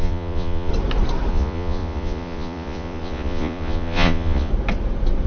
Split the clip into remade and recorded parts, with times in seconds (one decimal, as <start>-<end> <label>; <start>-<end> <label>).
0.0-0.7 remade; 0.7-1.3 recorded; 1.3-4.5 remade; 4.5-5.3 recorded